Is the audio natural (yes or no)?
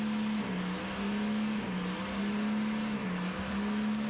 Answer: yes